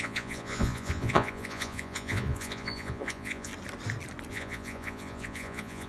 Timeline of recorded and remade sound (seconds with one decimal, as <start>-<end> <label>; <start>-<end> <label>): 0.0-3.5 remade; 3.5-4.3 recorded; 4.3-5.9 remade